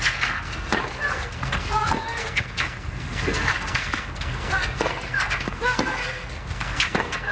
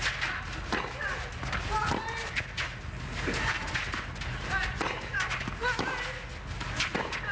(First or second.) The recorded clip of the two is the second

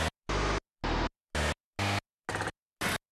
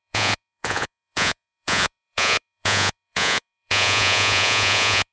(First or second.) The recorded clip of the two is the first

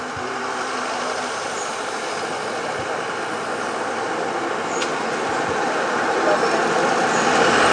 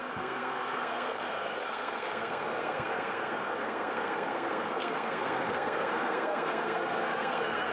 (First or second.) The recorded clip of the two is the first